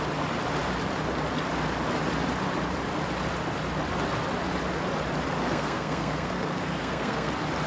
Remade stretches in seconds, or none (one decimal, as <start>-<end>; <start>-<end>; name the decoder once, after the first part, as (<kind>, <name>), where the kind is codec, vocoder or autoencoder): 5.4-7.3 (codec, SNAC)